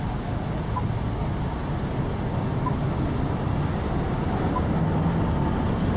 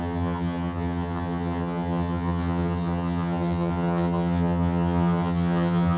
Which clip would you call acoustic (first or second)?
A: first